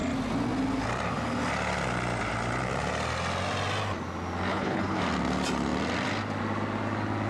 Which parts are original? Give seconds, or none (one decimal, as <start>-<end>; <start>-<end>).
0.0-4.5; 5.0-7.3